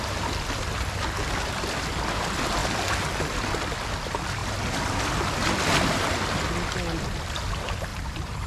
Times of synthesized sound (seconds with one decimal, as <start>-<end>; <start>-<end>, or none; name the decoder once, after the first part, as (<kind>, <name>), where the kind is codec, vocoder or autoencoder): 7.9-8.5 (vocoder, BigVGAN v2)